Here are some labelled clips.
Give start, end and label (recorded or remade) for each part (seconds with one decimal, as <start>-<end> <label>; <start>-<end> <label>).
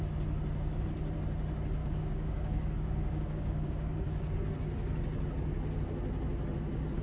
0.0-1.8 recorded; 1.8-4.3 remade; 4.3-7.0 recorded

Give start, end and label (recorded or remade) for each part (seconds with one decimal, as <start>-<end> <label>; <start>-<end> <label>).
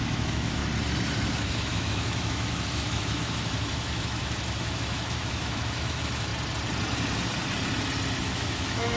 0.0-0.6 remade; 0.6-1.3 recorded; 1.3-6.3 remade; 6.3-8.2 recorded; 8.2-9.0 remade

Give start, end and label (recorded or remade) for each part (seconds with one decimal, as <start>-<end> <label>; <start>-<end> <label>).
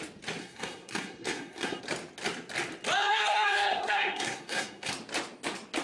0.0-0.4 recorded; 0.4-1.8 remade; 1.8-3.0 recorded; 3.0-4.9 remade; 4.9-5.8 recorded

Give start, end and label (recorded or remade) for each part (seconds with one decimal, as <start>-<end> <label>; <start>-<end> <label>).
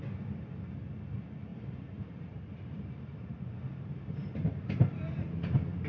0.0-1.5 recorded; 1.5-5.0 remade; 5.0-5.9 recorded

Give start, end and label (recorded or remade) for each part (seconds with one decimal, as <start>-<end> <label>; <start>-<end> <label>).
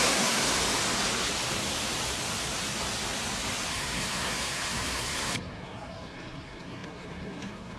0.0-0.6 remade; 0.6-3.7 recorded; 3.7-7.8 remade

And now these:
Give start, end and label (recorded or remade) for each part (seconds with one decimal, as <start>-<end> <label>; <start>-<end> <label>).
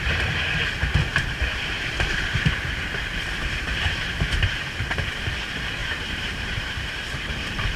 0.0-1.1 recorded; 1.1-4.6 remade; 4.6-5.8 recorded; 5.8-7.8 remade